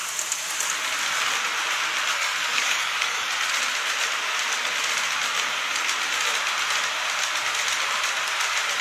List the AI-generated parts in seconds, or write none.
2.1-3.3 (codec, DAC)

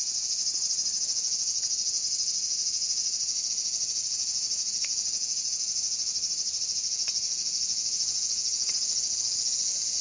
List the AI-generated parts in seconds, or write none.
0.0-0.4 (vocoder, Vocos); 1.0-6.1; 6.7-10.0

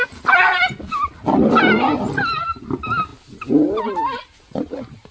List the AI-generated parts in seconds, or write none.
none

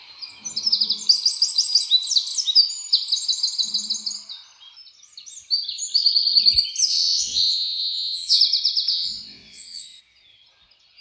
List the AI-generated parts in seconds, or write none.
6.9-8.4 (vocoder, WaveNeXt); 8.9-10.0

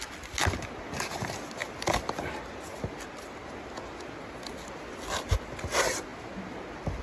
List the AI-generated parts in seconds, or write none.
none

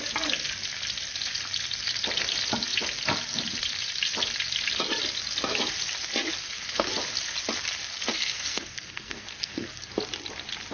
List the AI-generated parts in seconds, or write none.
6.4-6.9 (codec, SNAC); 8.1-9.9

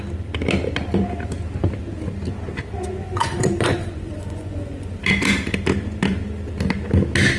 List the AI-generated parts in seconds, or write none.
3.0-5.0 (vocoder, Vocos)

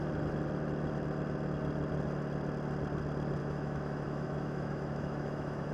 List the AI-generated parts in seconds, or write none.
3.4-5.7 (autoencoder, DAC-VAE)